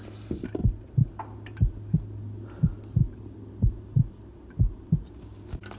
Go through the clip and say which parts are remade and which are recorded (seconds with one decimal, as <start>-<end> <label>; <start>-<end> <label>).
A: 0.0-5.8 recorded